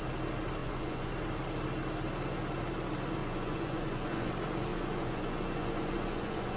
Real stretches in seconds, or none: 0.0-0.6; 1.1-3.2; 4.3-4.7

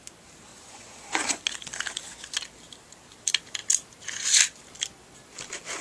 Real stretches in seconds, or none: 0.0-0.5; 1.4-5.8

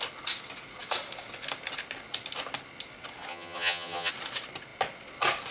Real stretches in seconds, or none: 0.0-3.3; 4.1-5.5

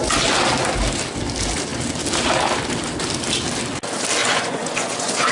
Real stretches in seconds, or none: 0.0-4.2

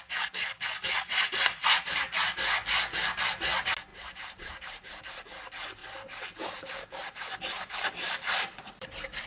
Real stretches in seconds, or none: 0.0-3.9; 5.0-5.8